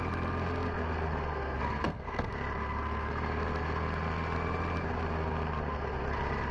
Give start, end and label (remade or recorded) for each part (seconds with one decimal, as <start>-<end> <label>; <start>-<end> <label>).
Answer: 0.0-1.3 recorded; 1.3-2.3 remade; 2.3-6.5 recorded